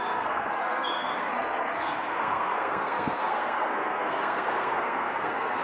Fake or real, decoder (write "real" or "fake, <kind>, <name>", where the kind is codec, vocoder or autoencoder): fake, codec, SNAC